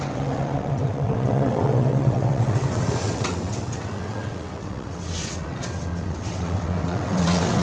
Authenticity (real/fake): fake